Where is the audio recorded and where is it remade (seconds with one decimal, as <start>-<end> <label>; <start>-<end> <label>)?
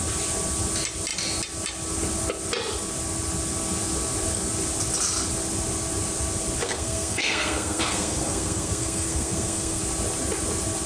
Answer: 0.0-6.6 recorded; 6.6-9.8 remade; 9.8-10.9 recorded